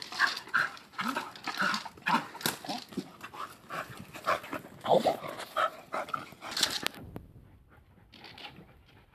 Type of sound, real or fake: real